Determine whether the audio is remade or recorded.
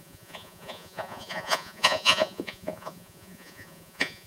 remade